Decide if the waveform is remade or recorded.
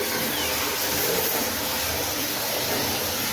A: recorded